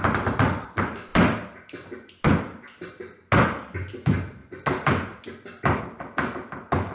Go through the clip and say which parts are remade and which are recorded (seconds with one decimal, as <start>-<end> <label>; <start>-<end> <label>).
0.0-6.9 recorded